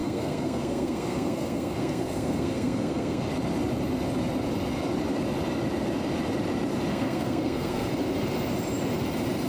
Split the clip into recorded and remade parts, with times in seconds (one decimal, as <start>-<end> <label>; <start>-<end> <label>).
0.0-3.2 remade; 3.2-6.9 recorded; 6.9-7.9 remade; 7.9-9.5 recorded